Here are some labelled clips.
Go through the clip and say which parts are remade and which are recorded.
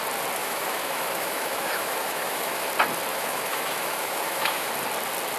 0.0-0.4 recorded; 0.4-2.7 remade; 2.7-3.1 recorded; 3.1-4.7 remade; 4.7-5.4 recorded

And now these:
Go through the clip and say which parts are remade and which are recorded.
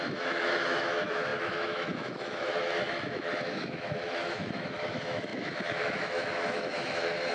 0.0-7.3 remade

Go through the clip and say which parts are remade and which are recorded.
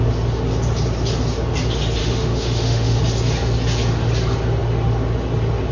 0.0-2.0 recorded; 2.0-3.0 remade; 3.0-5.7 recorded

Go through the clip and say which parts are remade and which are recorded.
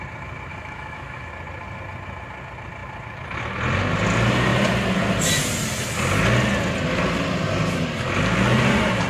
0.0-0.5 recorded; 0.5-1.3 remade; 1.3-9.1 recorded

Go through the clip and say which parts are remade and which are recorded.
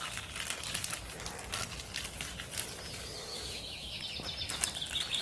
0.0-3.3 recorded; 3.3-4.0 remade; 4.0-5.2 recorded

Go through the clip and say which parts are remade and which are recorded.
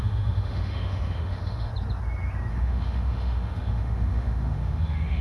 0.0-1.7 remade; 1.7-2.5 recorded; 2.5-5.2 remade